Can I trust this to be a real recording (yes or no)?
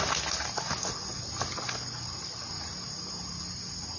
yes